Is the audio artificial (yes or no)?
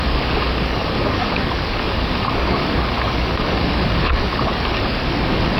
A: yes